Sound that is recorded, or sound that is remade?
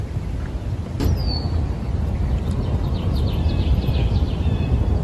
recorded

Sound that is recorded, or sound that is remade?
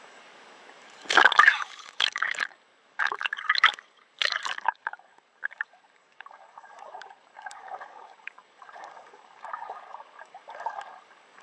remade